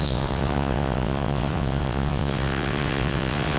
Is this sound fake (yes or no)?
yes